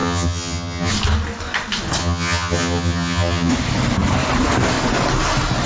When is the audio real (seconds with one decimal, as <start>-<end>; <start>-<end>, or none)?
0.9-2.0; 3.5-5.7